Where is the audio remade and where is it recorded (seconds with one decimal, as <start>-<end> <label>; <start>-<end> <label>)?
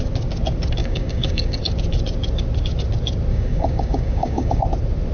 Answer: 0.0-0.8 recorded; 0.8-1.6 remade; 1.6-3.3 recorded; 3.3-4.6 remade; 4.6-5.1 recorded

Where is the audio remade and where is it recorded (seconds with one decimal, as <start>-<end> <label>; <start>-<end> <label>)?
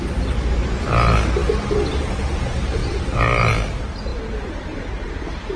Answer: 0.0-5.6 recorded